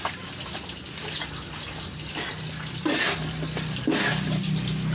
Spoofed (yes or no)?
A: no